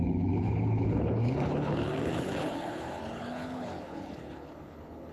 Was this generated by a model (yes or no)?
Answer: yes